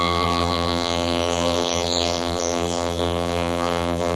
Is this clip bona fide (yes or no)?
no